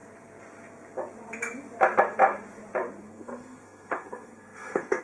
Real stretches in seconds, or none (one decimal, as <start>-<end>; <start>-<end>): 0.0-3.0